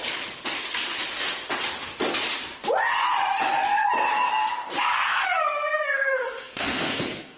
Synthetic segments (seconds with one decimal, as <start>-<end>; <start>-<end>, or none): 4.9-7.4